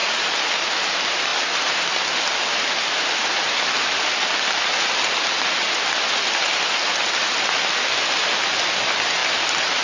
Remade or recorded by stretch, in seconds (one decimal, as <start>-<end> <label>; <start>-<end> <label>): 0.0-9.8 recorded